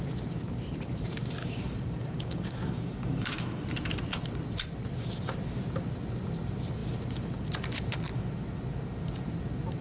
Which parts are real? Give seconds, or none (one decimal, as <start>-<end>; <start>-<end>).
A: 0.0-1.4; 3.6-9.8